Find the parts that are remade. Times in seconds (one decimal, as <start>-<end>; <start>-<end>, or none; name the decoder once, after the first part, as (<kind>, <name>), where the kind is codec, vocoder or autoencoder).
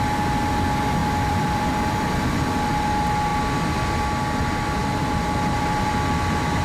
1.0-2.4 (vocoder, BigVGAN v2); 4.8-5.9